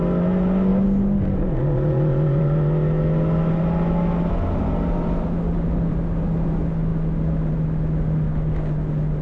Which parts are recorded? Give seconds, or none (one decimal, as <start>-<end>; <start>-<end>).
0.0-9.2